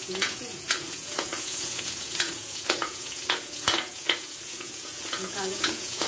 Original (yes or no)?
no